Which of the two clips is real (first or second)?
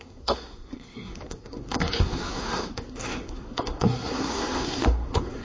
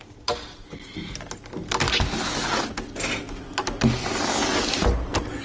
second